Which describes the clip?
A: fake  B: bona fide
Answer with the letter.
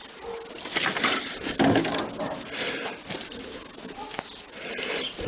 B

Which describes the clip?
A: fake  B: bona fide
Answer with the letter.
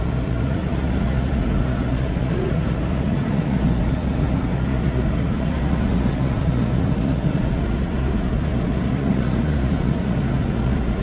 A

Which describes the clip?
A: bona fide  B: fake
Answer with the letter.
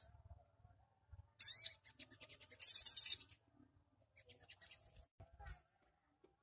A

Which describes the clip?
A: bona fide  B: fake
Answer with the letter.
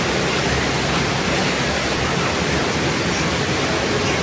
A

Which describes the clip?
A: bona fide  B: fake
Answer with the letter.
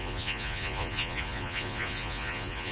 B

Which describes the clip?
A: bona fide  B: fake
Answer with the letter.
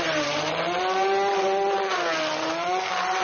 A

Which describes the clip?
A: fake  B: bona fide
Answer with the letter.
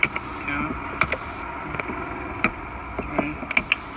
B